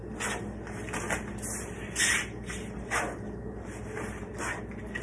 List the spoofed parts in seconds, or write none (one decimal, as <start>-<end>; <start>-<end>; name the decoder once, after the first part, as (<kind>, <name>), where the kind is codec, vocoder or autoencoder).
none